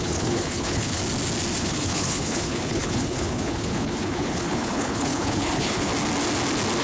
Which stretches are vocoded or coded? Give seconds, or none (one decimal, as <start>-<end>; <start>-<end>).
0.0-1.0; 1.6-5.9